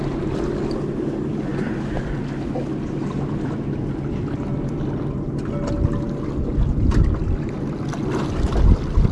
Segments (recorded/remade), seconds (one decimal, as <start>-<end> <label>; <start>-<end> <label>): 0.0-9.1 recorded